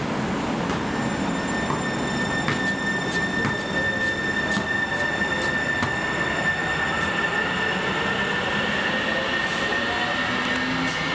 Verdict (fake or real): real